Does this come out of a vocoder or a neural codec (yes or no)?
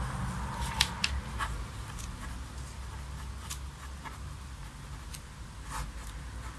no